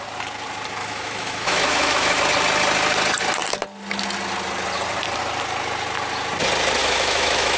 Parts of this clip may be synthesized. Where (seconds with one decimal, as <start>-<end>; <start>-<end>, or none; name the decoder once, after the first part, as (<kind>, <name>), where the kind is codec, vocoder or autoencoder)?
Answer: 0.8-2.2 (autoencoder, DAC-VAE); 6.8-7.6